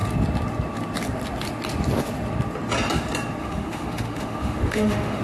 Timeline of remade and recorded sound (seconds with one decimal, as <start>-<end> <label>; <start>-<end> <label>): 0.0-3.4 recorded; 3.4-5.2 remade